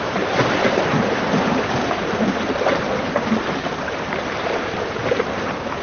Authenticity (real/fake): fake